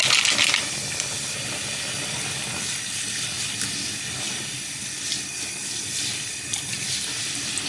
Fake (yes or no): no